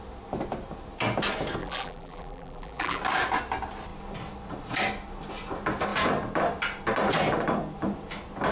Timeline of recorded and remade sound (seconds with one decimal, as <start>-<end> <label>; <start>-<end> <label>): 0.0-1.6 recorded; 1.6-3.0 remade; 3.0-8.5 recorded